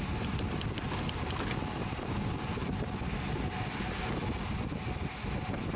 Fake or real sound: real